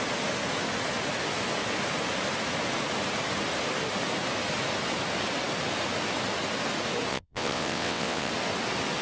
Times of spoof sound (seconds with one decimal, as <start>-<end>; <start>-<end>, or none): 7.1-8.3